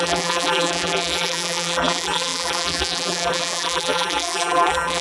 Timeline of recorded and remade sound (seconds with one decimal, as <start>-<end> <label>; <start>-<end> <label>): 0.0-5.0 remade